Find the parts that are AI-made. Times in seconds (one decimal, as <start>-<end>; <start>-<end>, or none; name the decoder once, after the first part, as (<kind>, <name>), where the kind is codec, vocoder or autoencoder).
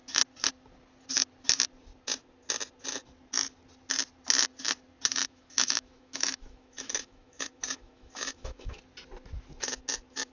5.2-8.8 (autoencoder, DAC-VAE)